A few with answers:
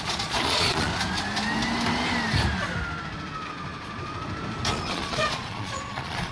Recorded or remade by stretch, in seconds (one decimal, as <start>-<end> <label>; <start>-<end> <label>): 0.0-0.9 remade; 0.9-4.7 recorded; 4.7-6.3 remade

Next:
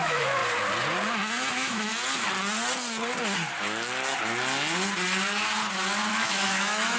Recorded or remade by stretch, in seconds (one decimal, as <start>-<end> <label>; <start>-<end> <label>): 0.0-0.4 remade; 0.4-1.5 recorded; 1.5-1.9 remade; 1.9-6.1 recorded; 6.1-7.0 remade

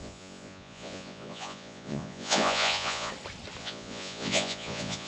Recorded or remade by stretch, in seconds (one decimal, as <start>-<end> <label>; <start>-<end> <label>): 0.0-3.1 remade; 3.1-3.6 recorded; 3.6-5.1 remade

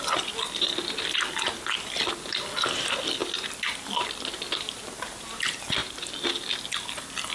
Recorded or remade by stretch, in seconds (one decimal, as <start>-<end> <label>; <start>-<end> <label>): 0.0-7.3 recorded

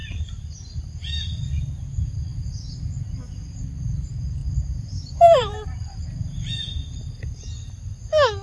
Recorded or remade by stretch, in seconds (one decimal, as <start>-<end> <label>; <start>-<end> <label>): 0.0-4.4 recorded; 4.4-6.0 remade; 6.0-8.4 recorded

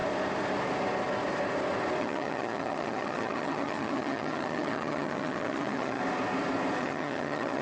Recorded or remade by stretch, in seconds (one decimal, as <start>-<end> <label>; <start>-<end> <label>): 0.0-2.0 recorded; 2.0-6.0 remade; 6.0-6.8 recorded; 6.8-7.6 remade

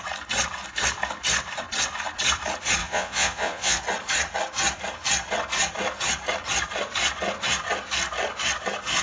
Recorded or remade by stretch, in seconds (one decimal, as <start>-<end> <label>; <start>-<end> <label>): 0.0-2.8 recorded; 2.8-3.8 remade; 3.8-9.0 recorded